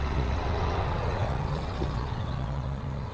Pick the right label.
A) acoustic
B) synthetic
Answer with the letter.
B